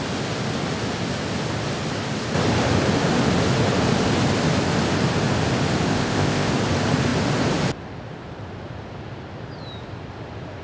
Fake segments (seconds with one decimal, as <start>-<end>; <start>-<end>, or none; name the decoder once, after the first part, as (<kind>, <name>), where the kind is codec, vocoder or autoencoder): 5.9-6.5 (codec, ZipCodec)